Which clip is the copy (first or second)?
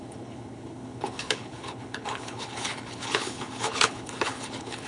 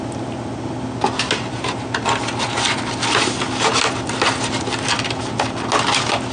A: first